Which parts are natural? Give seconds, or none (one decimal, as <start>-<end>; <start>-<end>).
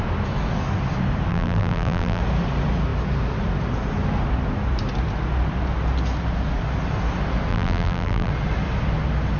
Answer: 0.0-1.3; 2.2-7.5; 8.3-9.4